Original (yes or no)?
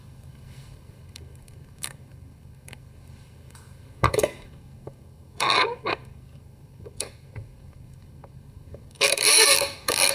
no